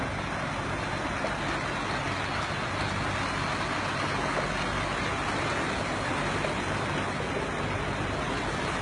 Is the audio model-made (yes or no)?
no